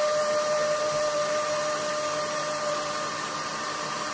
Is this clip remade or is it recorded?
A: remade